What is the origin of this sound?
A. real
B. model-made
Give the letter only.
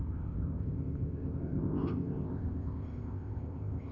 B